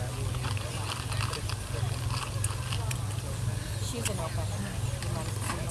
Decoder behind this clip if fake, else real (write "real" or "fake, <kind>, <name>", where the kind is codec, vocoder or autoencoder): real